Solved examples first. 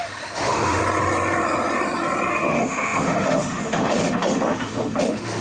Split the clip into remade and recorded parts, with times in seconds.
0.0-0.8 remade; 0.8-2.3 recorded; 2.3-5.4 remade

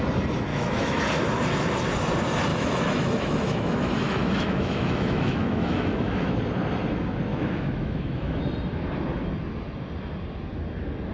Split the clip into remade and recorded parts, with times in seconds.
0.0-0.5 recorded; 0.5-1.0 remade; 1.0-2.5 recorded; 2.5-6.4 remade; 6.4-7.3 recorded; 7.3-8.4 remade; 8.4-11.1 recorded

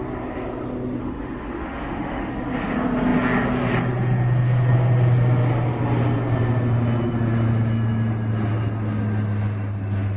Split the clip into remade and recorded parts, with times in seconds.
0.0-1.0 recorded; 1.0-2.3 remade; 2.3-10.2 recorded

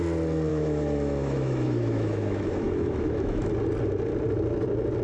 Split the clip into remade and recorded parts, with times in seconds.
0.0-0.5 recorded; 0.5-3.5 remade; 3.5-5.0 recorded

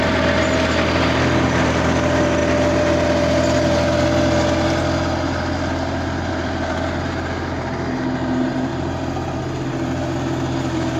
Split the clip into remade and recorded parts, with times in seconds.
0.0-11.0 recorded

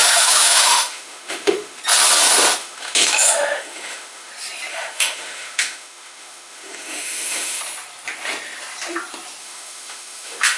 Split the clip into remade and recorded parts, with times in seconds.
0.0-1.8 remade; 1.8-2.6 recorded; 2.6-4.3 remade; 4.3-4.7 recorded; 4.7-7.6 remade; 7.6-9.4 recorded; 9.4-10.6 remade